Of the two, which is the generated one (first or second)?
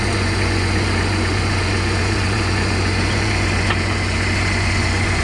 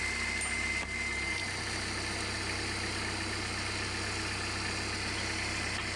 first